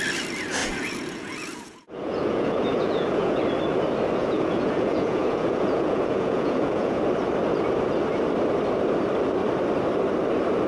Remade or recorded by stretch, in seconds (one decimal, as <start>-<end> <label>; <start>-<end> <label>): 0.0-0.6 recorded; 0.6-3.4 remade; 3.4-4.2 recorded; 4.2-7.0 remade; 7.0-10.7 recorded